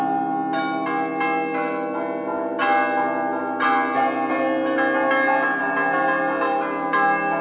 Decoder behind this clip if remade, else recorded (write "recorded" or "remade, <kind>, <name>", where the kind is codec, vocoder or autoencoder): recorded